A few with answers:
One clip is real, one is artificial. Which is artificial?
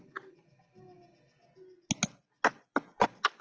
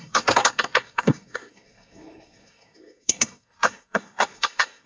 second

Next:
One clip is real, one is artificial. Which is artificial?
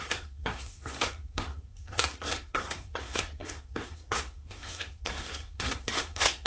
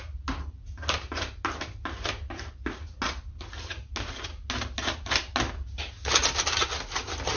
first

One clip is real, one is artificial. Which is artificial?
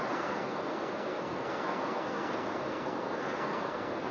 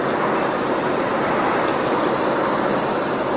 first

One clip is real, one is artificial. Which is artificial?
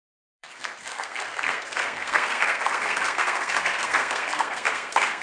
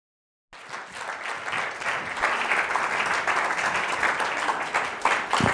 first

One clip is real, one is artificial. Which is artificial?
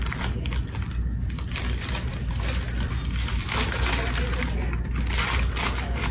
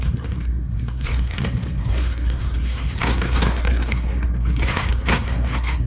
second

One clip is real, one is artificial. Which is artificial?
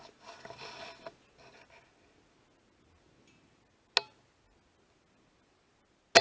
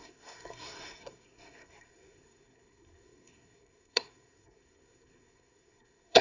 second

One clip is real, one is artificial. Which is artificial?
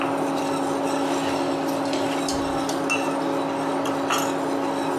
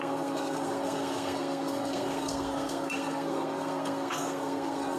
second